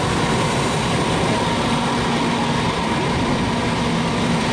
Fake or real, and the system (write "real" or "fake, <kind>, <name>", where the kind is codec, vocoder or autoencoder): real